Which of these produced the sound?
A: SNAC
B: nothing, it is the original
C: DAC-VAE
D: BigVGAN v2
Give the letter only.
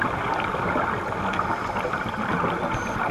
B